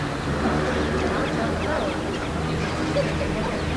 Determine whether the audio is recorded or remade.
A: recorded